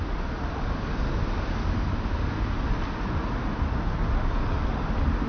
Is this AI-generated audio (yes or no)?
no